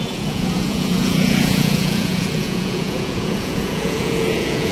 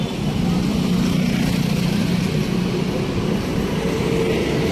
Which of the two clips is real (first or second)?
second